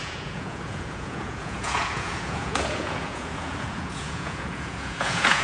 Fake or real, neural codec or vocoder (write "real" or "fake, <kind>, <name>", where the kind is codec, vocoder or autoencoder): fake, vocoder, Vocos